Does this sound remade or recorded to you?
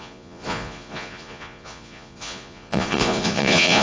remade